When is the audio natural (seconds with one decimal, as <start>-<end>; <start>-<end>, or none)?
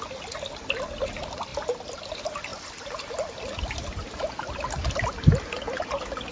0.0-2.5; 3.1-6.3